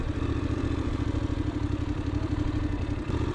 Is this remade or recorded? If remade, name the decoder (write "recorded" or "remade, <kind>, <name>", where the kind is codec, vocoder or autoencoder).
remade, vocoder, BigVGAN v2